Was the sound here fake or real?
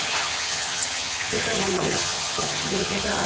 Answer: fake